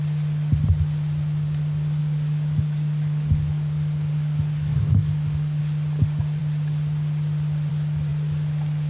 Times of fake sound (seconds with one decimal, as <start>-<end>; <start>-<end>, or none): 2.0-5.6

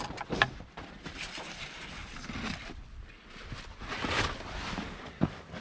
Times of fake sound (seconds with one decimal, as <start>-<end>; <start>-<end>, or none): none

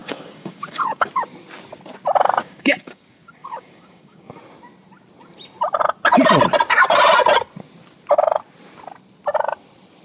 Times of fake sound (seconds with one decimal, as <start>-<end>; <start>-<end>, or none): 0.0-1.1; 2.4-4.3

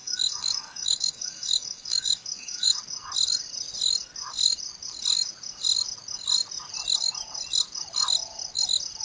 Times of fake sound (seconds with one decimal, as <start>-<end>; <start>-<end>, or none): 0.0-2.8

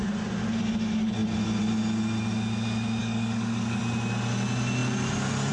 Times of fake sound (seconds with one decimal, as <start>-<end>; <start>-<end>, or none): 3.0-3.8

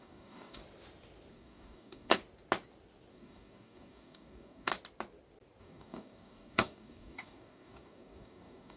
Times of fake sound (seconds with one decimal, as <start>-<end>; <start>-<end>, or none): 0.0-0.6; 1.3-2.2; 3.1-4.7; 5.6-8.8

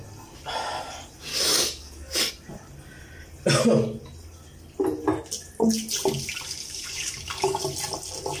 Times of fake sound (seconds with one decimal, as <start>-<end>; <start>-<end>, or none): 1.3-2.3; 6.6-7.6